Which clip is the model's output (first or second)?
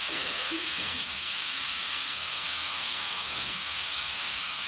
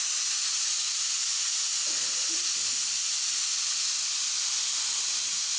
first